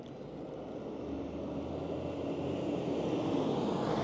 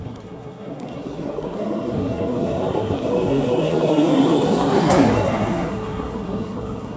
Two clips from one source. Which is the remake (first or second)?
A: second